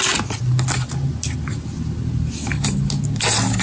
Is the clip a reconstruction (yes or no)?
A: no